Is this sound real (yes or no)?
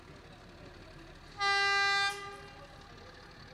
yes